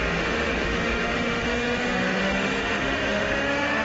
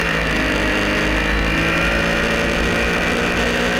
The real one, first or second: second